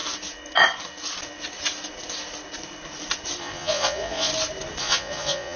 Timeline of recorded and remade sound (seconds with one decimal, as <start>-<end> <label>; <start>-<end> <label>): 0.0-3.4 recorded; 3.4-4.3 remade; 4.3-4.8 recorded; 4.8-5.6 remade